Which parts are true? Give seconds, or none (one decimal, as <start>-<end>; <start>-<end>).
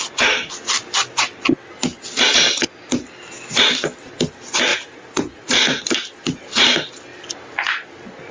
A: 0.0-4.7; 5.8-8.3